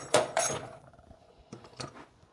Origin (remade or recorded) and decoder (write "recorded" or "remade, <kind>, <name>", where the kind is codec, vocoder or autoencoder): remade, vocoder, Vocos